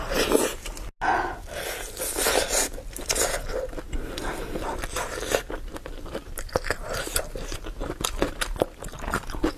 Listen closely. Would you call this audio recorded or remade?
recorded